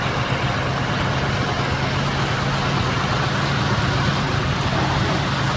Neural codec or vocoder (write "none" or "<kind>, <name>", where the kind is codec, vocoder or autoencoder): none